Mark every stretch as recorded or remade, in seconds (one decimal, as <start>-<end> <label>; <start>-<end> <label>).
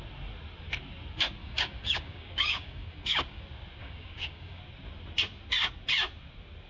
0.0-1.4 recorded; 1.4-3.4 remade; 3.4-3.8 recorded; 3.8-4.6 remade; 4.6-6.7 recorded